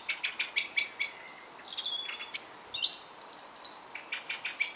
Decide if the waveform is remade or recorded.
recorded